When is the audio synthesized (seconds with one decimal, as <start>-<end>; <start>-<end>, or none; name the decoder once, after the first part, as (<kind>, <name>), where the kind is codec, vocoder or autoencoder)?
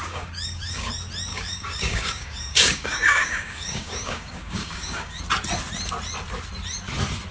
0.0-0.9 (codec, DAC); 1.3-5.2